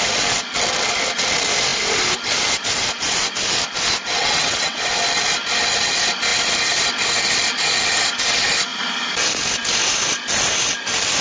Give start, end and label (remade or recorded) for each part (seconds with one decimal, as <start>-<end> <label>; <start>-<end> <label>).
0.0-4.2 recorded; 4.2-4.8 remade; 4.8-11.2 recorded